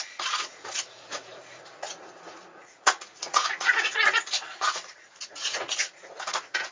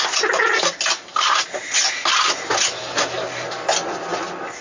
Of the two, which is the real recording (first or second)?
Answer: second